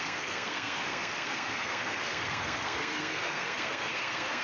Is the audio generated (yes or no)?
yes